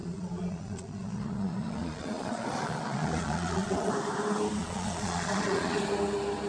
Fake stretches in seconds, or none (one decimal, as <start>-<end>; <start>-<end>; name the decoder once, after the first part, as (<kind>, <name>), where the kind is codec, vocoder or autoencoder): 0.0-3.9 (vocoder, Vocos); 4.6-5.8